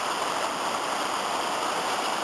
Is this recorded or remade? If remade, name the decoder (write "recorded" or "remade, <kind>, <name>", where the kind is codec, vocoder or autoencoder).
recorded